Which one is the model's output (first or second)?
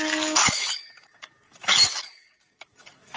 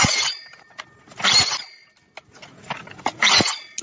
first